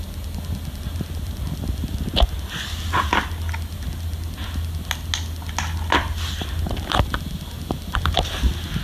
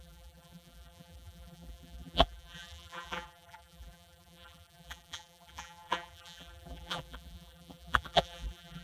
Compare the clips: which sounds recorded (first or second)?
first